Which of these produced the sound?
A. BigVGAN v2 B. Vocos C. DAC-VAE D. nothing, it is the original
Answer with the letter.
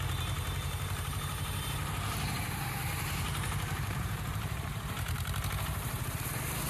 A